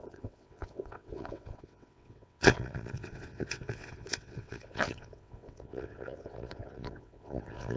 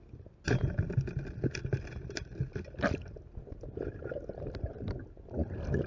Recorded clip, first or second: second